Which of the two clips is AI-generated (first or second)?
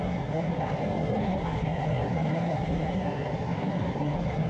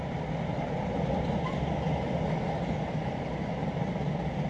first